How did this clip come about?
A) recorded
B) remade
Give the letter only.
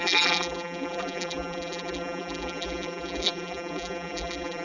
B